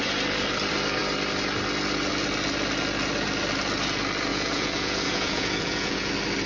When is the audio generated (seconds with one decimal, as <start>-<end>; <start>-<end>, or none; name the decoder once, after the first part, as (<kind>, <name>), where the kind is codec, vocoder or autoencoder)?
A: 4.3-6.1 (vocoder, Vocos)